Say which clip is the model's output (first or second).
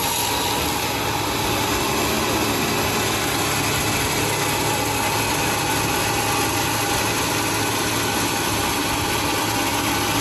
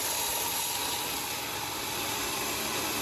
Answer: second